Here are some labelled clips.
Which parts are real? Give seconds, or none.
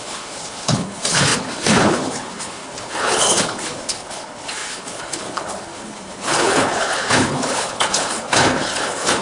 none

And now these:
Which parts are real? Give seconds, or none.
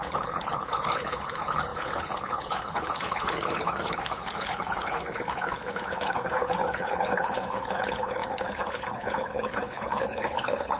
none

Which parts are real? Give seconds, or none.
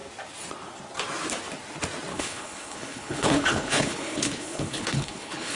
0.0-2.1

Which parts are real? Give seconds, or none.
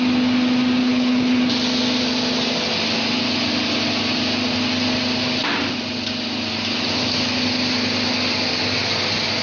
0.0-0.8; 1.4-9.4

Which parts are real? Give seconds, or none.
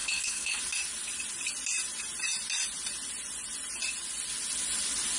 0.6-5.2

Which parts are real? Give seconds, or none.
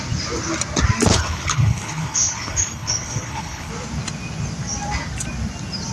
0.0-1.1; 3.7-5.9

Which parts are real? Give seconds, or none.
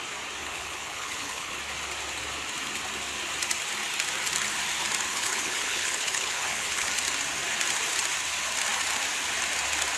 0.0-0.4; 1.6-5.1; 6.9-10.0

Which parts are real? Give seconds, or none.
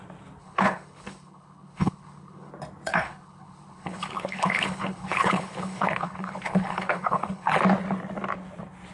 0.0-0.4; 2.5-2.9; 7.6-8.9